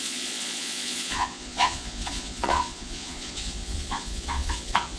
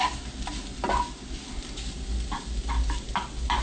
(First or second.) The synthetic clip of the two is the first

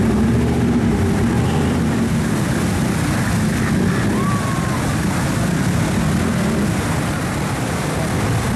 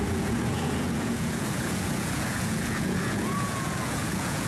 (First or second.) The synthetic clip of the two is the second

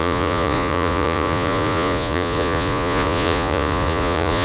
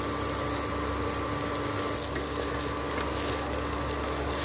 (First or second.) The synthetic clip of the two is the first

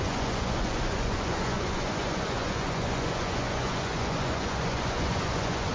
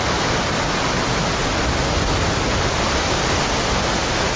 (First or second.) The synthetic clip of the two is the first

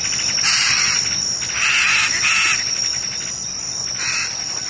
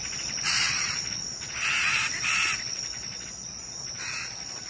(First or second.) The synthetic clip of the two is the second